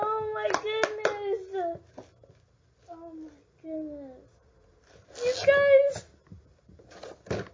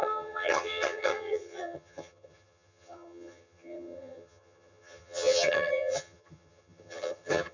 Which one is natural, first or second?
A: first